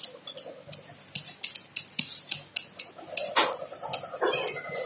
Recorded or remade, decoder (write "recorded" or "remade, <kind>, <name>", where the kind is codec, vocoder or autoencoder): recorded